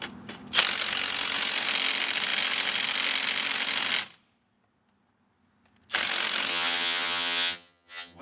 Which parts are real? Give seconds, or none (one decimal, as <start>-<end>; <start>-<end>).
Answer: 0.0-6.5

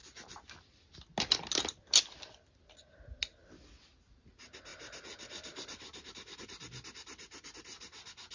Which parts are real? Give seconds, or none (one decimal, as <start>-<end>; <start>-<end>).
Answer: 0.0-8.3